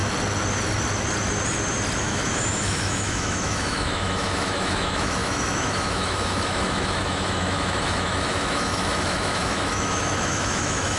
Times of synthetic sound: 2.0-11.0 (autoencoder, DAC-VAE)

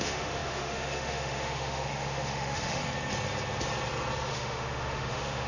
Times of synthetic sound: 0.0-2.8 (autoencoder, DAC-VAE); 4.3-5.5

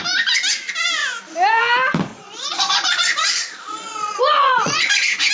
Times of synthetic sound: 2.1-5.3 (vocoder, Vocos)

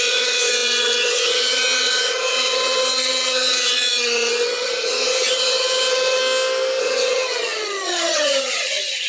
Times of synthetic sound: 0.0-6.2 (vocoder, HiFi-GAN); 6.8-9.1

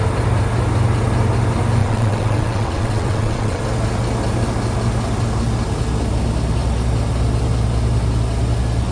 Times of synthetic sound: 1.8-3.6 (vocoder, WaveNeXt)